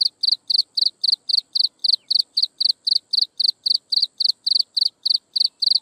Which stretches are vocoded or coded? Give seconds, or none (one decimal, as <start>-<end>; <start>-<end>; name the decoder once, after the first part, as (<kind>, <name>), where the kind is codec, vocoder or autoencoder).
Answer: none

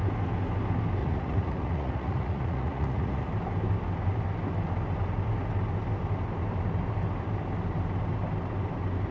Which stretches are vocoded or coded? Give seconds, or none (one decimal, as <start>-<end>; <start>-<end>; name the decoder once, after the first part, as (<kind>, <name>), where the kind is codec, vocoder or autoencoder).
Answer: 1.0-3.3 (vocoder, Vocos)

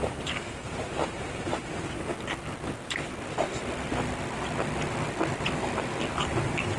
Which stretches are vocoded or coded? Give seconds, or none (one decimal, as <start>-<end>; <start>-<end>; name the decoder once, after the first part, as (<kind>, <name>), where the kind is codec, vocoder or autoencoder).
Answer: 0.0-2.1 (vocoder, BigVGAN v2); 6.2-6.8

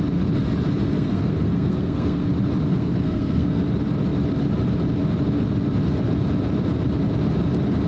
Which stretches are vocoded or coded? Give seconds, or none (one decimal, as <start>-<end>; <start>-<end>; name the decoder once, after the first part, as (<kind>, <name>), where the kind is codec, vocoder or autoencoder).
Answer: 0.9-2.3 (codec, SNAC); 2.7-3.6

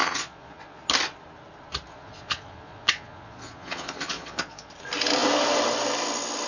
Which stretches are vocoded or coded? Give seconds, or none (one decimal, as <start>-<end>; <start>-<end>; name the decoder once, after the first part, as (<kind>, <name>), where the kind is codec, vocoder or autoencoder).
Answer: 0.0-0.8 (vocoder, Vocos); 1.9-4.7